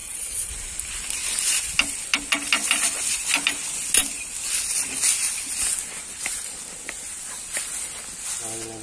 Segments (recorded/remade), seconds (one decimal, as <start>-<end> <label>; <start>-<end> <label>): 0.0-0.5 remade; 0.5-8.8 recorded